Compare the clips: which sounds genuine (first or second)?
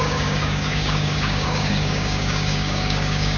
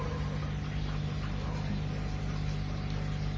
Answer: second